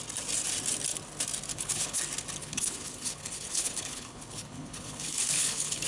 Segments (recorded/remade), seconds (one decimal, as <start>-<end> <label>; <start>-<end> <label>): 0.0-1.5 recorded; 1.5-2.0 remade; 2.0-2.4 recorded; 2.4-5.9 remade